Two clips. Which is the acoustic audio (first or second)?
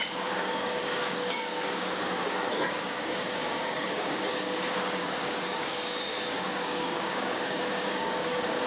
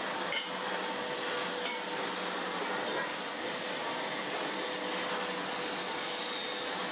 second